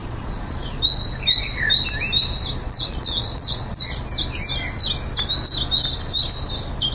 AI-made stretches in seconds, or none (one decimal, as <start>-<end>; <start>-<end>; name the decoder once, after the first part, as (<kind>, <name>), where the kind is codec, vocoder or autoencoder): 0.0-0.8 (vocoder, Vocos); 2.6-4.0

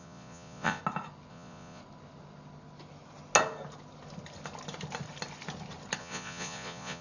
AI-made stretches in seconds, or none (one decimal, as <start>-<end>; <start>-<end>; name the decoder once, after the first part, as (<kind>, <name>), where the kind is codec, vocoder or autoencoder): 0.0-0.8 (vocoder, Vocos); 1.3-1.8; 6.0-7.0

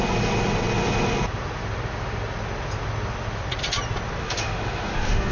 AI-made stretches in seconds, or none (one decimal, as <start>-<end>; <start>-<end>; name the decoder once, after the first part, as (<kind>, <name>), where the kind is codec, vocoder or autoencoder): 4.2-5.3 (autoencoder, DAC-VAE)

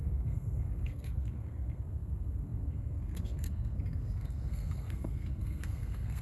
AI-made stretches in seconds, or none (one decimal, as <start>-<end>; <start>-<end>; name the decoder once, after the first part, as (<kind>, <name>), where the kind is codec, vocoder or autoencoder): 0.0-6.2 (codec, SNAC)

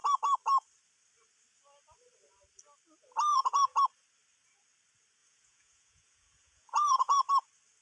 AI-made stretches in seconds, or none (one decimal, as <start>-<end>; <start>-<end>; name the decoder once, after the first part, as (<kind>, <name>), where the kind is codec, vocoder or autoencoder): 3.3-3.8 (vocoder, Vocos); 5.2-7.3